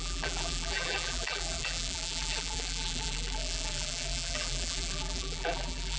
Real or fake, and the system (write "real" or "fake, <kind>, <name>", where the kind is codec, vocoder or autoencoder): fake, vocoder, BigVGAN v2